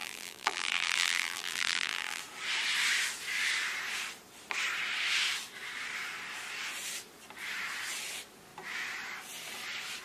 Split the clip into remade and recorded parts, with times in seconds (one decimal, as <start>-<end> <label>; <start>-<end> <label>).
0.0-2.2 remade; 2.2-10.0 recorded